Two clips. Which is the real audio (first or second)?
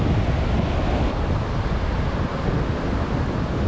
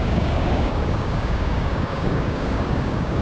first